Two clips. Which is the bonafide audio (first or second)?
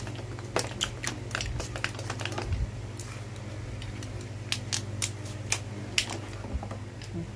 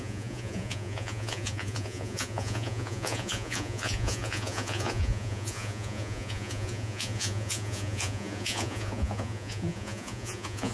first